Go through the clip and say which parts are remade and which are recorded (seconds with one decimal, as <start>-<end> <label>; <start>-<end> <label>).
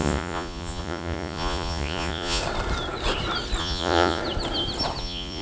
0.0-2.4 remade; 2.4-3.6 recorded; 3.6-4.2 remade; 4.2-5.0 recorded; 5.0-5.4 remade